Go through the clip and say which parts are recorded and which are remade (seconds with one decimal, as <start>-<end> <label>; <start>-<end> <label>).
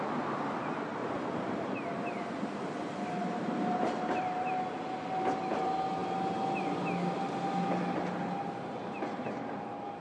0.0-0.9 recorded; 0.9-4.6 remade; 4.6-10.0 recorded